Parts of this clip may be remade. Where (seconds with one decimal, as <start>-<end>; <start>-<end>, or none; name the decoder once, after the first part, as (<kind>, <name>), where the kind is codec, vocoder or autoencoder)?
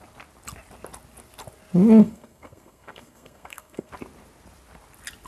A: 2.0-3.9 (codec, SNAC)